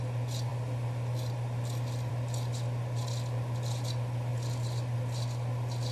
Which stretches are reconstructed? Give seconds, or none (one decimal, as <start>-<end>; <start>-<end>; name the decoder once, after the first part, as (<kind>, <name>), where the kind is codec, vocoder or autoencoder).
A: 0.5-2.1 (vocoder, BigVGAN v2); 4.3-5.0